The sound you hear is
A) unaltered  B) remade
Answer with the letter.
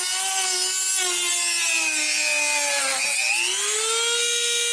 A